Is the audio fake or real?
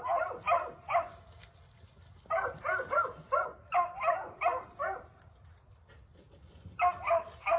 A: real